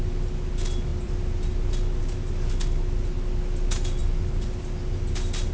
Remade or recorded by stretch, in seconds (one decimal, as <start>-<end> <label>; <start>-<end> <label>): 0.0-5.5 recorded